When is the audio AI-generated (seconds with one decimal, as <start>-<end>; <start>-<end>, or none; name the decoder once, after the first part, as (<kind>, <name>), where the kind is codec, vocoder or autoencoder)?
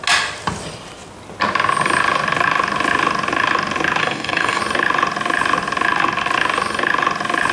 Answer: 4.0-4.6 (codec, DAC)